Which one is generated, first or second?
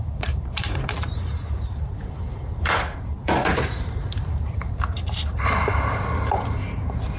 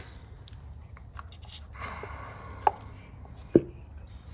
first